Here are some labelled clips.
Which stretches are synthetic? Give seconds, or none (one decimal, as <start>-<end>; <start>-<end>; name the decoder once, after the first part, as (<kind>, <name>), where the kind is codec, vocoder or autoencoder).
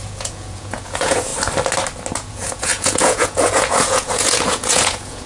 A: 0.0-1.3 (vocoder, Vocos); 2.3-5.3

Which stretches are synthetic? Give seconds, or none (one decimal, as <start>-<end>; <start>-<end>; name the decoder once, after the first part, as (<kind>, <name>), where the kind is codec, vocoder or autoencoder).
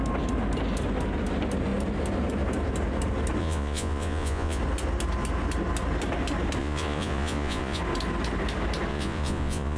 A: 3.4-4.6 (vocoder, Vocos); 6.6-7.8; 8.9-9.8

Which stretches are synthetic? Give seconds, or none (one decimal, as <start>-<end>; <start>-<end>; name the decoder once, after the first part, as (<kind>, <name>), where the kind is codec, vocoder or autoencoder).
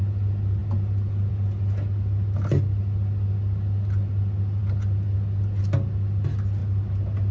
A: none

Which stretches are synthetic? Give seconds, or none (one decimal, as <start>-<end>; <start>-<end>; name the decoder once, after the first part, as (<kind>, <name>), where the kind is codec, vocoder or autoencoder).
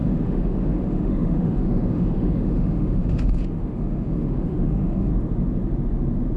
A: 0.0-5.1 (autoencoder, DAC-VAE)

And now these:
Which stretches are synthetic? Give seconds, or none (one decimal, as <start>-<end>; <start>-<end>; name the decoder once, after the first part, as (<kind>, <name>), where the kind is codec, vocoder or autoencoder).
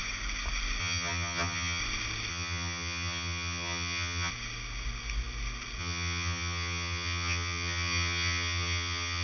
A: 0.8-1.8 (vocoder, HiFi-GAN); 2.3-4.3; 5.8-9.2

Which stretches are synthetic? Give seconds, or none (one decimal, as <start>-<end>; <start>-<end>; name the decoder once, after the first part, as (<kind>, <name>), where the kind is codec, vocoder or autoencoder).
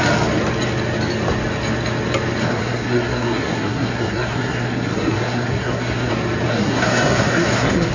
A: 2.4-6.1 (codec, SNAC); 6.5-7.9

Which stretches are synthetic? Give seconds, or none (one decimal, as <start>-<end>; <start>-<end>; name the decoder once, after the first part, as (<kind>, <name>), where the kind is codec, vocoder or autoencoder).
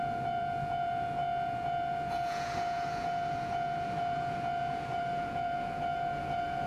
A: 0.0-6.7 (vocoder, Vocos)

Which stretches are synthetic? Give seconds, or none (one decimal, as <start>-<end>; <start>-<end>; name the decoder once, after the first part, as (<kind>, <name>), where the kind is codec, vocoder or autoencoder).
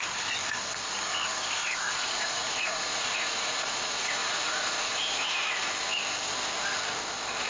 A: 1.6-5.7 (vocoder, Vocos)